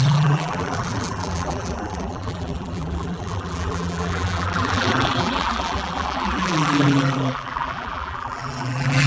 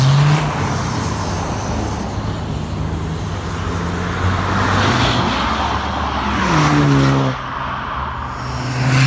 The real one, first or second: second